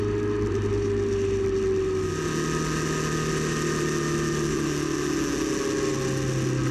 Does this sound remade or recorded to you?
recorded